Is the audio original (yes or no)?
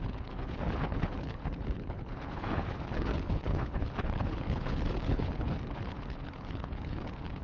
no